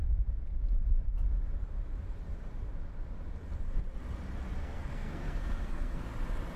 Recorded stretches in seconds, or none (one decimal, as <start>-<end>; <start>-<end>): 0.0-4.6; 6.0-6.6